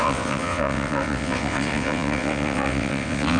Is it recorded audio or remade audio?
remade